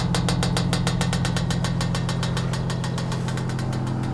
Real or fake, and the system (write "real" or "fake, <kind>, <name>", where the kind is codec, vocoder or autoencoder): real